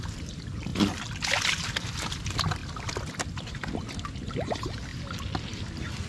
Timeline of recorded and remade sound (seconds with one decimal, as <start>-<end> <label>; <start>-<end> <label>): 0.0-6.1 recorded